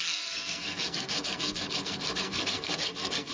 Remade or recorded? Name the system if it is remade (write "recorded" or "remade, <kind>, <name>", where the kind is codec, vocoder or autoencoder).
remade, codec, SNAC